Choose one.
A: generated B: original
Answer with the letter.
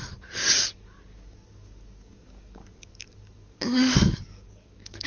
A